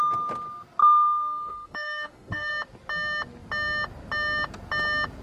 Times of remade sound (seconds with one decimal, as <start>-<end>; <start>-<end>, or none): 0.8-2.5